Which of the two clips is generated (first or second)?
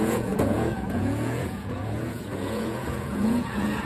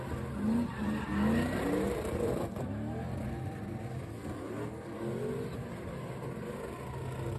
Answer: first